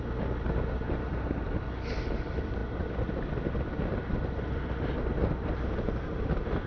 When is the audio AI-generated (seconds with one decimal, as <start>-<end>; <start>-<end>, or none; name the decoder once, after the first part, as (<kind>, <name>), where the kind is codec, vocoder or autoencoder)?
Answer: none